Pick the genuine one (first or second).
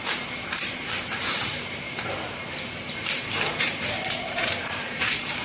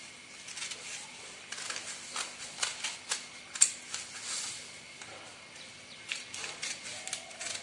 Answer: second